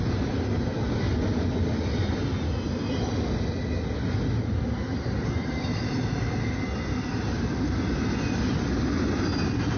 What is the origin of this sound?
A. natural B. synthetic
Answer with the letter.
A